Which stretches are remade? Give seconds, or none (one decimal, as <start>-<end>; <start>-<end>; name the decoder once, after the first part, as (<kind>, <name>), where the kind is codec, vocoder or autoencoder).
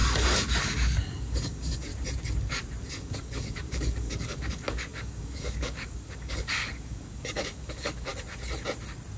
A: 0.7-1.9 (codec, DAC); 2.9-8.1